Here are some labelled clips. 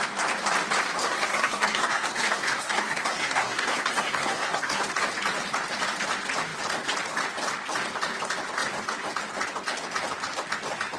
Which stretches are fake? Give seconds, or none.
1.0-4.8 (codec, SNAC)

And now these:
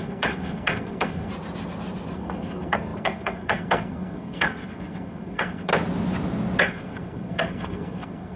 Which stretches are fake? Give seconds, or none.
0.0-1.3 (codec, SNAC); 2.1-5.7; 6.6-8.4

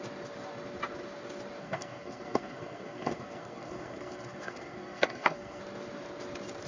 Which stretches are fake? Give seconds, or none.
1.6-5.6 (codec, SNAC)

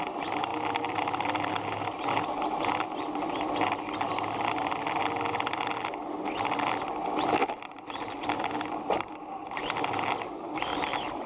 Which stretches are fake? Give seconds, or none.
none

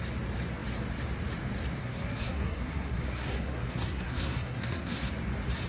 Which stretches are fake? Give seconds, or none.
1.8-5.1 (codec, SNAC)

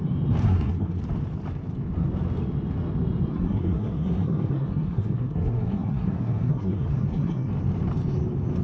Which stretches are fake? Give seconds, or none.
0.4-1.0 (codec, SNAC); 3.3-7.5

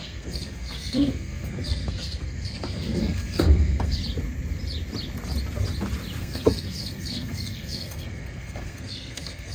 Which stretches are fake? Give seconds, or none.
0.0-4.0 (codec, SNAC); 6.2-9.5

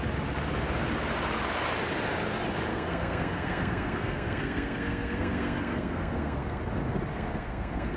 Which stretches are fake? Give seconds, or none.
2.7-6.6 (codec, SNAC); 7.1-8.0